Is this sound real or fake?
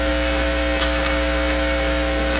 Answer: fake